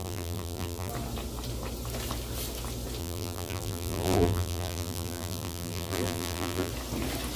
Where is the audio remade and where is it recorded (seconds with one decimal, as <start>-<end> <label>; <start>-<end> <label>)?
0.0-0.9 remade; 0.9-3.0 recorded; 3.0-6.7 remade; 6.7-7.4 recorded